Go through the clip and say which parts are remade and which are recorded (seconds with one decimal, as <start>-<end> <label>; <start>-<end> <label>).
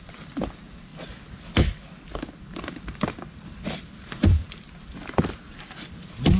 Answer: 0.0-0.9 remade; 0.9-2.4 recorded; 2.4-4.4 remade; 4.4-5.9 recorded; 5.9-6.4 remade